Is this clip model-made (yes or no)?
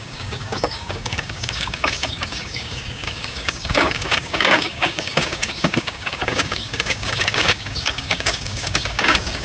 yes